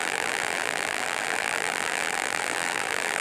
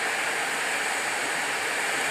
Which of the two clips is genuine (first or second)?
second